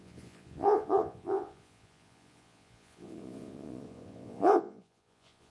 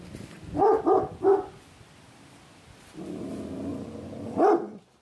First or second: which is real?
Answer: second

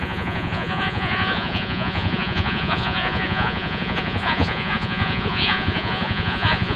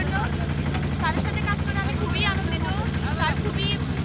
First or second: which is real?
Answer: second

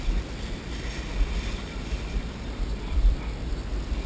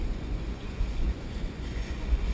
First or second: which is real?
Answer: first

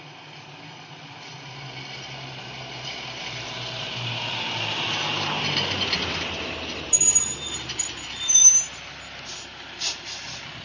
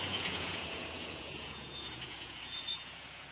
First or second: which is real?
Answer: first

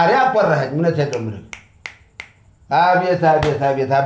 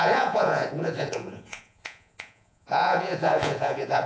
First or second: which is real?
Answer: first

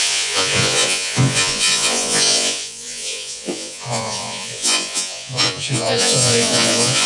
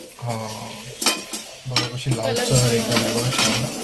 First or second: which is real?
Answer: second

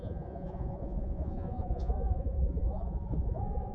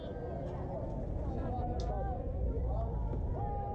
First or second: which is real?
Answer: second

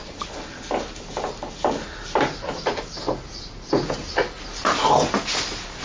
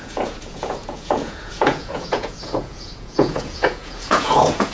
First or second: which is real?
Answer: first